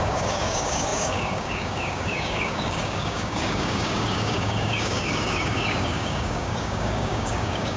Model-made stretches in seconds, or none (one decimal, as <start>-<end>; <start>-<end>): 0.0-7.8